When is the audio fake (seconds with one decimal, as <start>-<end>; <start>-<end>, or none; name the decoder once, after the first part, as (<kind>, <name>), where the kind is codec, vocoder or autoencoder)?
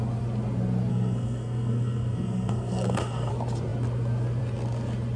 0.9-3.3 (codec, SNAC)